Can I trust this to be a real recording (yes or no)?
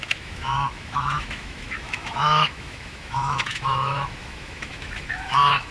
no